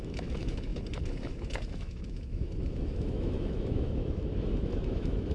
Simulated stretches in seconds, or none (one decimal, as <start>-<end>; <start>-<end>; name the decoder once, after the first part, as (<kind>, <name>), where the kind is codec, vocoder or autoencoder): 0.0-5.3 (autoencoder, DAC-VAE)

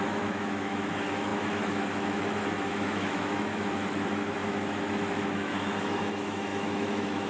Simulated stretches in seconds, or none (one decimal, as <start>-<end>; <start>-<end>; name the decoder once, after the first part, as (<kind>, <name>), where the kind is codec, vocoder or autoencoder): 0.0-7.3 (autoencoder, DAC-VAE)